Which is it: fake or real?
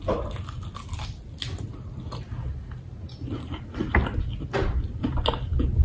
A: real